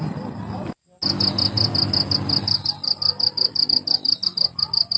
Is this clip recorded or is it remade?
recorded